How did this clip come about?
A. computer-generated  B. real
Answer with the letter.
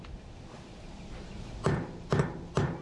B